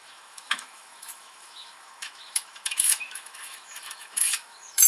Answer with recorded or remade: remade